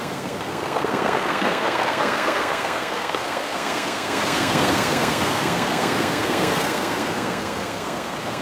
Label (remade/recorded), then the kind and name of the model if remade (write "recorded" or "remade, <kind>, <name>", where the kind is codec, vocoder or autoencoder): remade, codec, SNAC